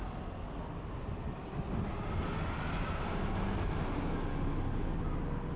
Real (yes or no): yes